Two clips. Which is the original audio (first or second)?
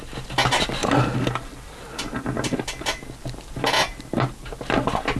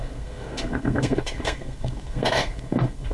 first